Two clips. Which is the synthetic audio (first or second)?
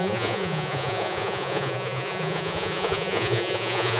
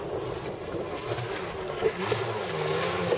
first